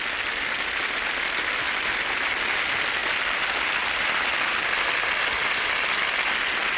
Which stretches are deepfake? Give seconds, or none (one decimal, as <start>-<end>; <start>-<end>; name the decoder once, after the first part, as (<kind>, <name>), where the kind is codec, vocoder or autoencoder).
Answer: none